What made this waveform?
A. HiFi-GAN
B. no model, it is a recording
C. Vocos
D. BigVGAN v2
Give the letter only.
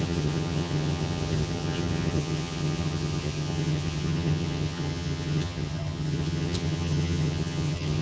A